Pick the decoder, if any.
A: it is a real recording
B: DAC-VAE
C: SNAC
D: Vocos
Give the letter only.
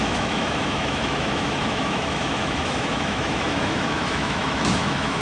B